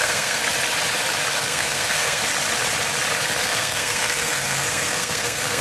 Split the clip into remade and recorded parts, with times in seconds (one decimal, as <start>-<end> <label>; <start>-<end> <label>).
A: 0.0-0.4 remade; 0.4-1.4 recorded; 1.4-2.2 remade; 2.2-3.4 recorded; 3.4-5.6 remade